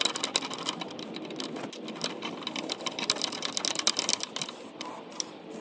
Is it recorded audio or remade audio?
recorded